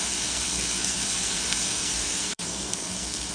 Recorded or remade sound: remade